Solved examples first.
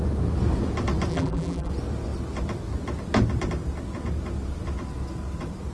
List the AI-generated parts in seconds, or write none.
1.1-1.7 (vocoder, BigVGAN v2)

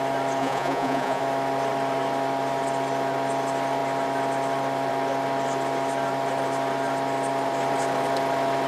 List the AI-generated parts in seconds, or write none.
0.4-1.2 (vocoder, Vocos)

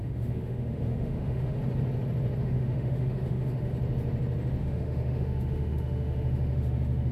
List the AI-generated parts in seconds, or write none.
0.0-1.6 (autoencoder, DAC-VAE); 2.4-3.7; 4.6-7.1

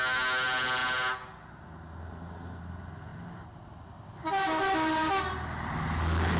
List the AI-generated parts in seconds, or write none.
none

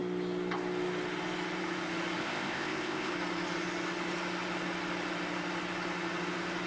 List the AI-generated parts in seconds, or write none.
2.2-3.1 (codec, ZipCodec)

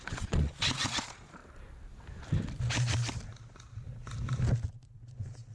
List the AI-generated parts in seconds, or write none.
0.0-1.4 (vocoder, Vocos); 4.7-5.5

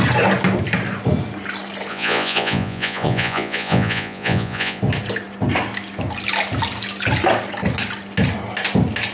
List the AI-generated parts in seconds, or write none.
1.9-4.8 (vocoder, Vocos)

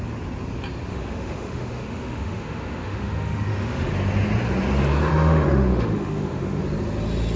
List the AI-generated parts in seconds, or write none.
0.9-3.9 (autoencoder, DAC-VAE); 5.1-6.6